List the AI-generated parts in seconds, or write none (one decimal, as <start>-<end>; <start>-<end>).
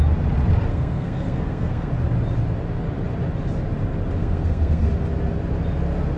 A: 0.7-1.9; 4.2-4.9